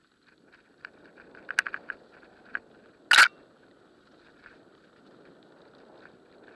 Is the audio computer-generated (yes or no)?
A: no